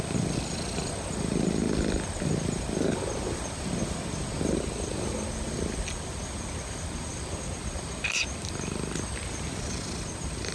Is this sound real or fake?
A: real